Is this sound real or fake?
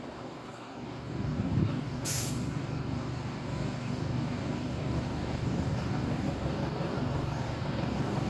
fake